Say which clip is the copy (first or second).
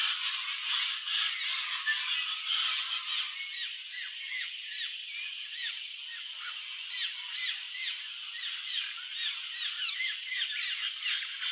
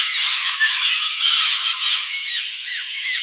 second